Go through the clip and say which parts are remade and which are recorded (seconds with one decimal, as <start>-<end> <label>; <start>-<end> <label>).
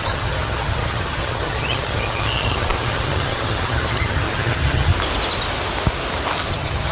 0.0-4.9 remade; 4.9-6.5 recorded; 6.5-6.9 remade